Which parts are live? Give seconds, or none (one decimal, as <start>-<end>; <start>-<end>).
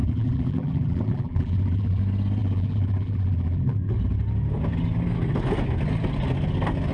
2.0-2.4; 3.9-6.9